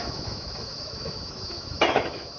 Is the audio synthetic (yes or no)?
yes